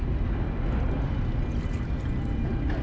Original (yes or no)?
yes